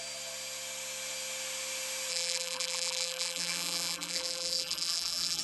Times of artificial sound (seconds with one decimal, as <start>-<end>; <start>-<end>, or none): 2.1-5.4

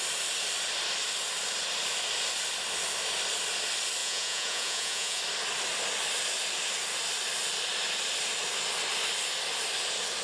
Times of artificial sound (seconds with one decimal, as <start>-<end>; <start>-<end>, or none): 4.0-5.2

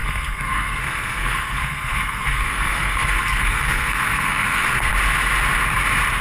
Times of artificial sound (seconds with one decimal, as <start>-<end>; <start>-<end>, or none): 0.0-4.9

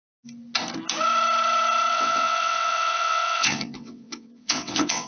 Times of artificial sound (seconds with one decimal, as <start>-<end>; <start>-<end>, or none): 1.9-5.1